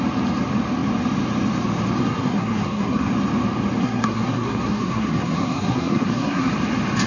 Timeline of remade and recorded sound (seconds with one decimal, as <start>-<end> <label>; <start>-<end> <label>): 0.0-2.0 recorded; 2.0-3.1 remade; 3.1-3.8 recorded; 3.8-6.5 remade; 6.5-7.1 recorded